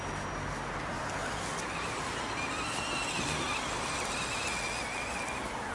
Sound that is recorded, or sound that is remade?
recorded